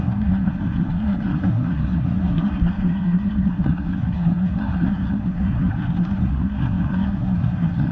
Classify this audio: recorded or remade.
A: remade